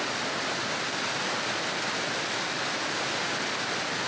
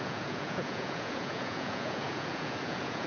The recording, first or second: first